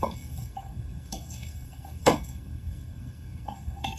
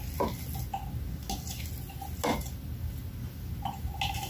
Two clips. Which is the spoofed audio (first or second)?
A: first